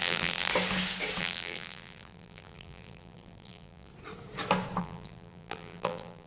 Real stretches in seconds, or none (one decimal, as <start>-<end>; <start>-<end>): 0.5-1.2; 3.9-4.8